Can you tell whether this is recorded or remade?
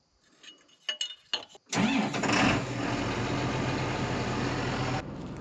recorded